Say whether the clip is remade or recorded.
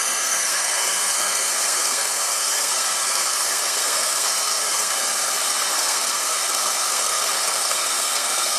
remade